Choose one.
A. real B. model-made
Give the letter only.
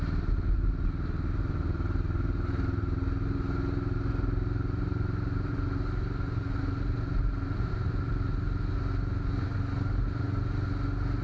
A